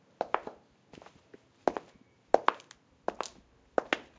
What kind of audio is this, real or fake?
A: real